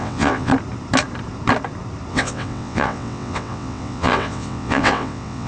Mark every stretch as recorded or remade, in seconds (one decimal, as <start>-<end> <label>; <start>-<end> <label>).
0.0-0.5 remade; 0.5-2.1 recorded; 2.1-5.5 remade